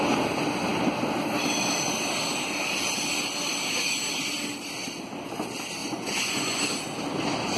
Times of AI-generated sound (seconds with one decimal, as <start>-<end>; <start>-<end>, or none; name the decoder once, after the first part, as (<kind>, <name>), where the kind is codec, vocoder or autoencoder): 5.8-6.6 (vocoder, Vocos)